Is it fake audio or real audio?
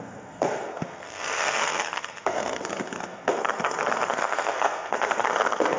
fake